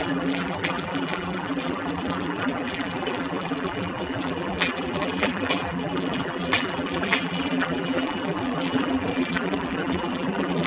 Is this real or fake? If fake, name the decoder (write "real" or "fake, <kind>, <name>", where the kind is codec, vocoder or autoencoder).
fake, vocoder, BigVGAN v2